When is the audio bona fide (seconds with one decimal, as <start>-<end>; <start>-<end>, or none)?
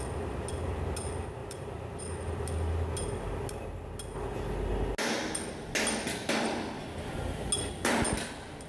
0.0-1.4; 2.0-6.8; 7.5-8.7